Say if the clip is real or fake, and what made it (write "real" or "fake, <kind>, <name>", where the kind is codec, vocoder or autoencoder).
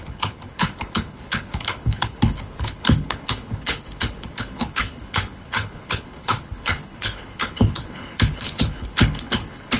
fake, codec, HILCodec